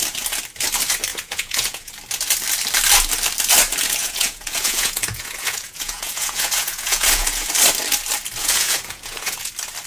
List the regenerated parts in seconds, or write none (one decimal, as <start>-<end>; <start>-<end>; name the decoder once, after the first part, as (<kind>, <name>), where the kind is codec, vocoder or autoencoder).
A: 1.1-1.9 (vocoder, Vocos); 4.0-7.5; 8.4-9.5